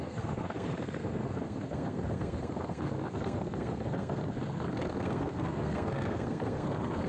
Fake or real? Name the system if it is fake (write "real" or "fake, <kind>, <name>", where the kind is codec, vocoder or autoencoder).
fake, codec, SNAC